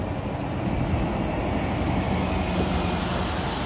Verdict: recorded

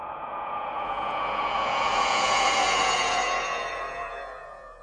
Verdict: remade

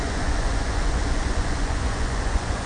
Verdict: remade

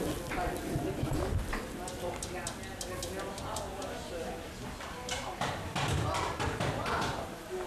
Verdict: recorded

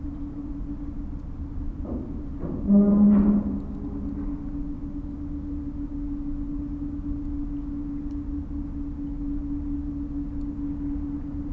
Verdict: recorded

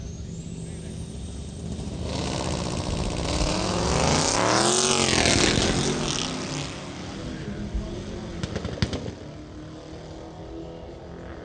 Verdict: recorded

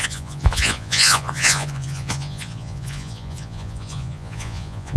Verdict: remade